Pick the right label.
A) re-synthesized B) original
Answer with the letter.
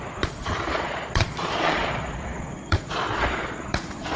A